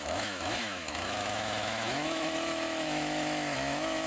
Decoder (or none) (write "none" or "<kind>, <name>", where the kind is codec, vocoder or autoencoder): autoencoder, DAC-VAE